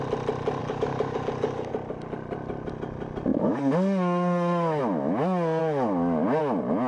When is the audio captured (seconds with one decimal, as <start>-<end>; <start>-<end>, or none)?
0.0-0.6; 1.7-3.3; 4.8-5.6; 6.4-6.9